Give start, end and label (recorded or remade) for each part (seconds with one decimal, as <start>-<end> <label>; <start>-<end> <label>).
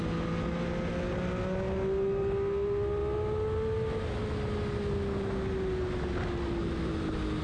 0.0-7.4 recorded